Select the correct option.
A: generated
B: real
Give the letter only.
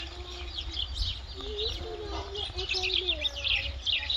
B